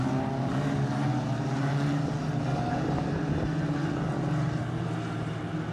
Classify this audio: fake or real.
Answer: real